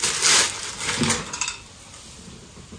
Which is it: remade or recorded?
recorded